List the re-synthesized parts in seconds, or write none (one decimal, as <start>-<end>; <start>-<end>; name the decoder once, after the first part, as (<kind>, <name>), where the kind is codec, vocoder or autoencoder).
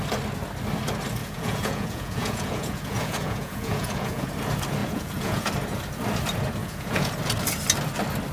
1.2-4.3 (vocoder, Vocos); 4.8-5.5; 6.6-7.1